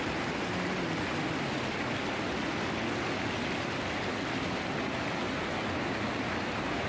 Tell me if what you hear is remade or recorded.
recorded